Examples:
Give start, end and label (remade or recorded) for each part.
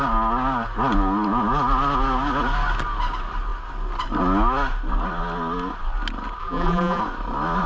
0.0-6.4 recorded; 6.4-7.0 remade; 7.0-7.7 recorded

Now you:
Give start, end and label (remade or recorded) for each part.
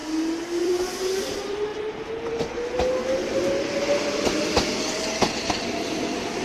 0.0-0.6 recorded; 0.6-1.7 remade; 1.7-5.5 recorded; 5.5-6.4 remade